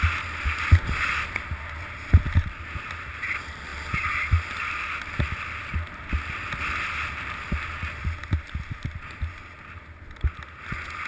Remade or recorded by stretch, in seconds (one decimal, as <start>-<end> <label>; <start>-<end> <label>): 0.0-11.1 recorded